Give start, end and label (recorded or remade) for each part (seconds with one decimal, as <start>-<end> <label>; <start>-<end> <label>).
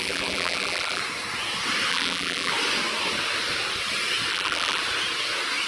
0.0-1.0 remade; 1.0-1.9 recorded; 1.9-2.5 remade; 2.5-4.3 recorded; 4.3-4.8 remade; 4.8-5.7 recorded